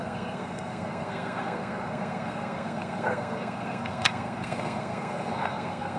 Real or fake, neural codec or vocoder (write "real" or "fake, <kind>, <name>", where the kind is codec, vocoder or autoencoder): fake, codec, SNAC